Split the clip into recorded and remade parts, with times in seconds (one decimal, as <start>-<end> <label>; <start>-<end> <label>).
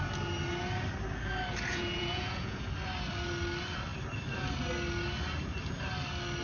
0.0-1.7 recorded; 1.7-2.7 remade; 2.7-6.4 recorded